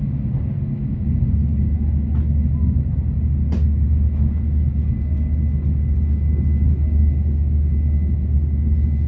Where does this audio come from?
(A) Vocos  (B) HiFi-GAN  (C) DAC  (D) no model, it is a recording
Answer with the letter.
D